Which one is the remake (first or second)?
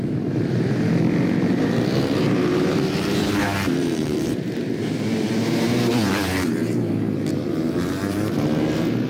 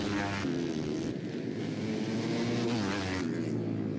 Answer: first